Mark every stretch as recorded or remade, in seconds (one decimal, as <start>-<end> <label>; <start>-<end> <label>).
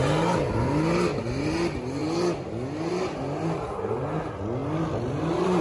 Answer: 0.0-5.6 recorded